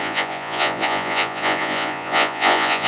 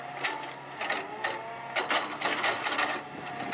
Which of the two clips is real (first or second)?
second